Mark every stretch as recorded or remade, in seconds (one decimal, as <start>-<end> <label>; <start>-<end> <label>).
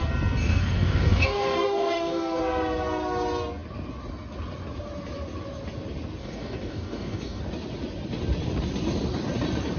0.0-0.4 recorded; 0.4-2.4 remade; 2.4-6.2 recorded; 6.2-7.4 remade; 7.4-9.8 recorded